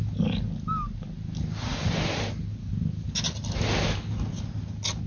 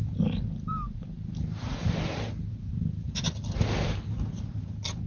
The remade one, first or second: second